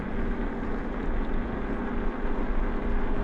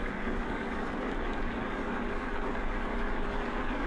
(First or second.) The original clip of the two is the first